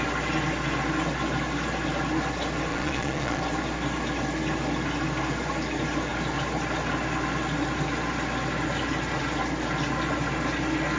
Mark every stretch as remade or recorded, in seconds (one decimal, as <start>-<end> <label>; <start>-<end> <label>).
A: 0.0-2.7 recorded; 2.7-3.4 remade; 3.4-11.0 recorded